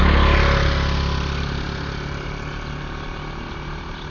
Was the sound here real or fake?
real